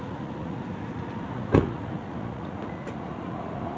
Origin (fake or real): fake